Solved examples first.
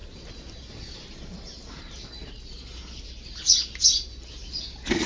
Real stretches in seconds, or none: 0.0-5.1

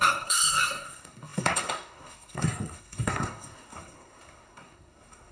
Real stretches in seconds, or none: none

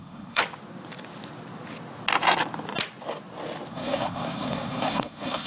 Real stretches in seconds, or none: 0.4-3.7

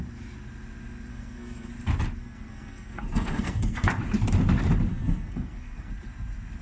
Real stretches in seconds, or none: 0.0-1.1; 1.7-2.2; 3.9-4.9; 5.9-6.6